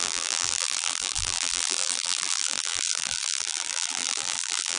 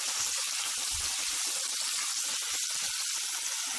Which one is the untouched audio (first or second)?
second